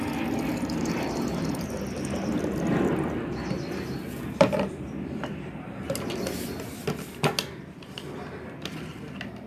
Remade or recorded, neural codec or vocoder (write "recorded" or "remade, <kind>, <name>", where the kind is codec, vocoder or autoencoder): recorded